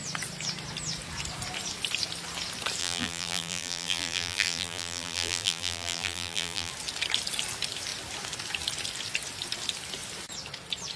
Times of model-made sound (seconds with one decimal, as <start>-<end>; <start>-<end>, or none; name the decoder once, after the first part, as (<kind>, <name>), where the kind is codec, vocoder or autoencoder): 2.8-6.7 (vocoder, BigVGAN v2)